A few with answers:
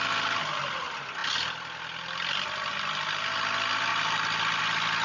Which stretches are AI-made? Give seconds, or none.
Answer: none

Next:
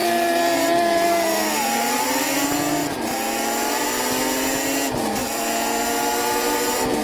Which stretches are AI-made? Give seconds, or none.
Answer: 0.0-7.0 (vocoder, BigVGAN v2)

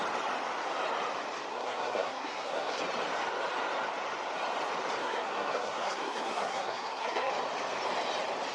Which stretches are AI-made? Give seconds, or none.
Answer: 1.5-2.8 (codec, SNAC); 5.0-7.3

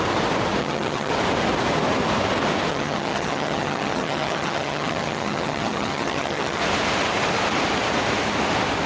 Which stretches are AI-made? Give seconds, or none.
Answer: 0.6-1.1 (vocoder, HiFi-GAN); 2.7-6.6

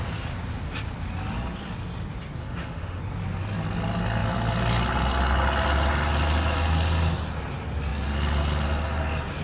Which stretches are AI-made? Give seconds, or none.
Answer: 2.4-3.0 (autoencoder, DAC-VAE)

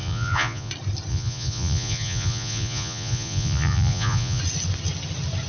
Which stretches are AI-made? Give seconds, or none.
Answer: 0.0-0.7 (vocoder, Vocos); 1.1-4.4

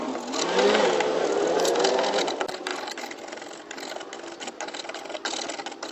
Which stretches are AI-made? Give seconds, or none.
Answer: none

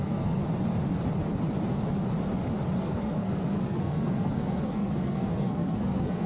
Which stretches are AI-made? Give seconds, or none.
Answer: 0.0-0.4 (codec, SNAC); 2.8-6.3